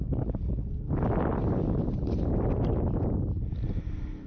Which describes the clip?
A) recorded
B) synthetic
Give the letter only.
A